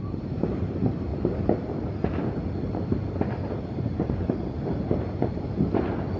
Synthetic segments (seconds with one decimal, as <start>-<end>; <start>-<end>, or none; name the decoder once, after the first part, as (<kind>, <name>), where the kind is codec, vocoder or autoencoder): 0.0-1.1 (vocoder, BigVGAN v2); 3.5-6.2